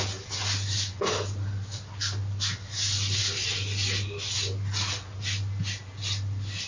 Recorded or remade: recorded